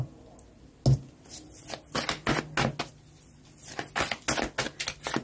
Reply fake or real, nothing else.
real